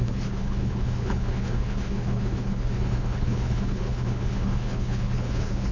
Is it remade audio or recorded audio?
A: remade